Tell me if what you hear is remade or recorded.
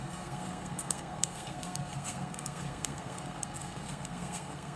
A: remade